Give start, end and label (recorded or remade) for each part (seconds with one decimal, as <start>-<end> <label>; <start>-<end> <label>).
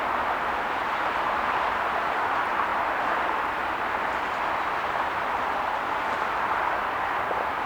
0.0-2.7 recorded; 2.7-7.3 remade; 7.3-7.7 recorded